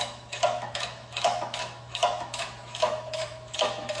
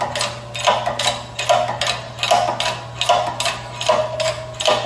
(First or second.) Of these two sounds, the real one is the second